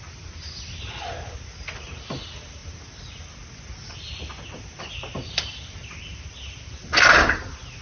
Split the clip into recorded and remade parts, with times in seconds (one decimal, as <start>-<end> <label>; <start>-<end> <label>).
0.0-7.8 recorded